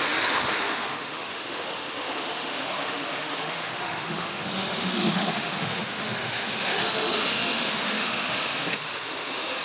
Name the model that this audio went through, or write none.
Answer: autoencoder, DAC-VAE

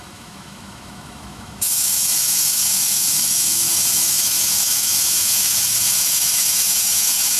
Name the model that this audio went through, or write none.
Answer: autoencoder, DAC-VAE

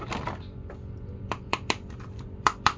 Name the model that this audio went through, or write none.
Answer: vocoder, BigVGAN v2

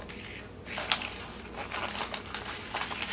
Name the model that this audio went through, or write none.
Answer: none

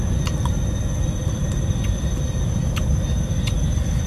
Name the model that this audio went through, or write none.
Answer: none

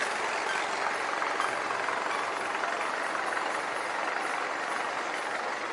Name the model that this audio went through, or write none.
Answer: none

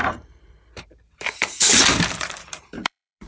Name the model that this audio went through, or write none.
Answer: vocoder, BigVGAN v2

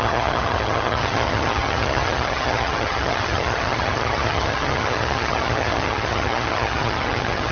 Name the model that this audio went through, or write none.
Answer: vocoder, HiFi-GAN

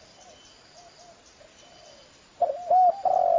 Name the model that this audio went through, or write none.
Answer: none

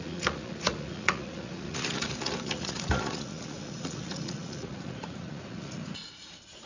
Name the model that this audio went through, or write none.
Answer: vocoder, Vocos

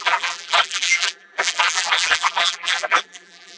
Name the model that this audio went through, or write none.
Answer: vocoder, BigVGAN v2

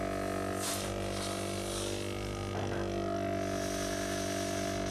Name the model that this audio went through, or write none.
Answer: none